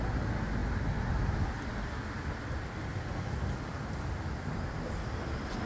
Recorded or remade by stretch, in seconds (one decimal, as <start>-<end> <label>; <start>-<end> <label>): 0.0-5.7 recorded

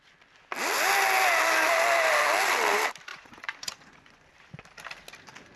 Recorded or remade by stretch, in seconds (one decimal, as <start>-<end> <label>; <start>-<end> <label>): 0.0-3.1 recorded; 3.1-4.3 remade; 4.3-5.6 recorded

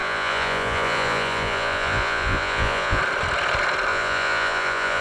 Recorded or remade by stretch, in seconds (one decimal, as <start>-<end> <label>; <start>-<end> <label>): 0.0-3.0 remade; 3.0-3.9 recorded; 3.9-5.0 remade

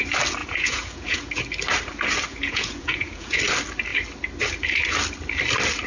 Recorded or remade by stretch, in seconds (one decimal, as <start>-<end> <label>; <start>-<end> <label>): 0.0-0.4 recorded; 0.4-1.3 remade; 1.3-2.3 recorded; 2.3-3.4 remade; 3.4-5.9 recorded